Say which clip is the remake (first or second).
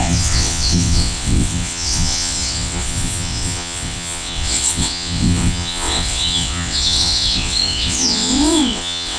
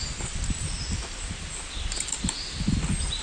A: first